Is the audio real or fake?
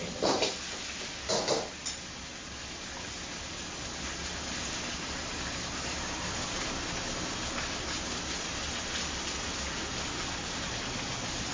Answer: real